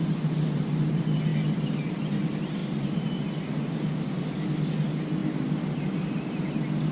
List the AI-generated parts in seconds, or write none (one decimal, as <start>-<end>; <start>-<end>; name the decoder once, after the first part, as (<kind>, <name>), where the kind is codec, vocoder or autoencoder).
none